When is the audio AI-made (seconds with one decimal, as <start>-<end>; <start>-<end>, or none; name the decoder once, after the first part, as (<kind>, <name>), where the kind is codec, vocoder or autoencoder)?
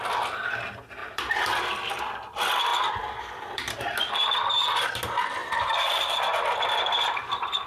1.0-1.9 (vocoder, BigVGAN v2); 2.7-4.9; 5.4-7.7